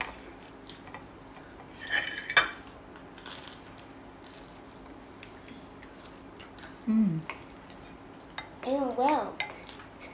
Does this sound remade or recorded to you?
recorded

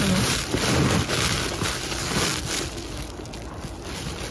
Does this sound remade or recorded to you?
recorded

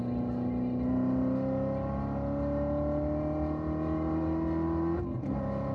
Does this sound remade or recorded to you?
recorded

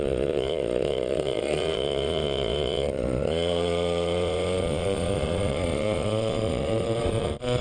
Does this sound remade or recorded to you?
remade